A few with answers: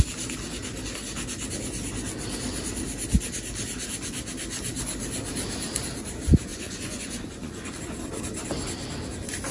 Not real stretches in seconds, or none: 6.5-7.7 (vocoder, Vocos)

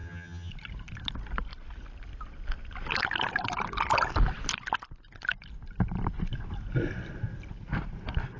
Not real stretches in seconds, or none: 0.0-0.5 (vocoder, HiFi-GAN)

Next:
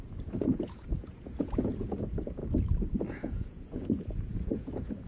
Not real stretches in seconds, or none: 0.0-2.4 (vocoder, Vocos); 3.1-5.1

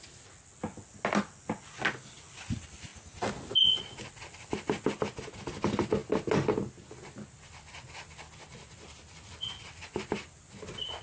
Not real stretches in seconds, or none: none

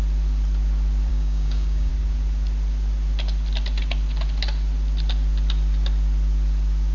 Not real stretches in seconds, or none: 1.1-1.9 (codec, DAC)

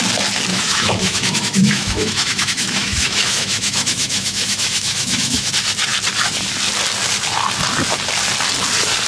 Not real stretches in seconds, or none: 0.5-5.5 (autoencoder, DAC-VAE)

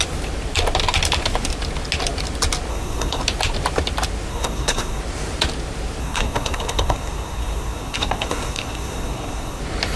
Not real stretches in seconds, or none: 2.7-3.2 (codec, SNAC); 4.3-5.0; 6.0-9.6

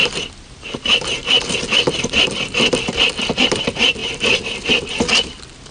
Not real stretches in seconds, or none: 3.4-4.0 (vocoder, BigVGAN v2)